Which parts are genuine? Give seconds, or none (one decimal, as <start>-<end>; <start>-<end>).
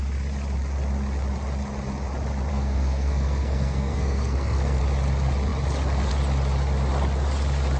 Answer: 0.0-2.5; 4.8-7.8